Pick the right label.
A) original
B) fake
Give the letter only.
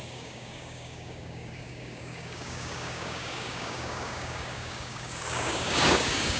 B